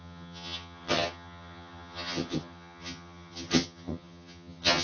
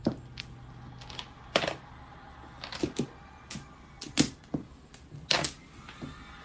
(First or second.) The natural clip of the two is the second